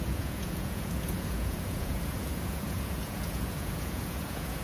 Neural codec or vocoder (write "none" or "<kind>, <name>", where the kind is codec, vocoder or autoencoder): vocoder, Vocos